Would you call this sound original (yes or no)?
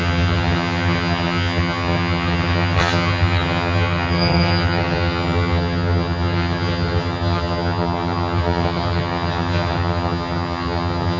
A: no